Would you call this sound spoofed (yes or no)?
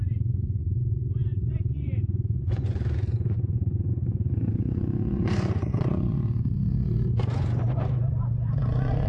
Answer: yes